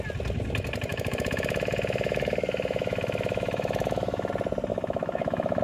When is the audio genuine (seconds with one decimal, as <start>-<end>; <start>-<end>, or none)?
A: 0.0-0.9; 4.3-4.7